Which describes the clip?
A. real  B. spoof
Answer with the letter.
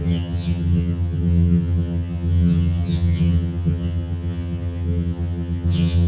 B